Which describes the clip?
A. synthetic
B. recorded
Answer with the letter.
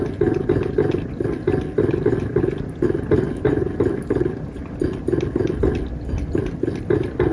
B